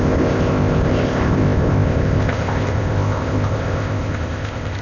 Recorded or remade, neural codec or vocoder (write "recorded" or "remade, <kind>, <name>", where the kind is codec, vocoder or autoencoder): remade, codec, ZipCodec